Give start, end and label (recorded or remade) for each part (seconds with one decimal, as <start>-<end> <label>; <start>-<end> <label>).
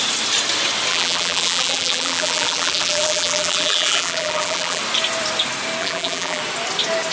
0.0-0.9 recorded; 0.9-4.8 remade; 4.8-5.8 recorded; 5.8-6.4 remade; 6.4-7.1 recorded